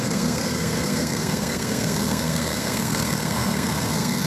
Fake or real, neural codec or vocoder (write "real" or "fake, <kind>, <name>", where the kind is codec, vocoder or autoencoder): fake, codec, SNAC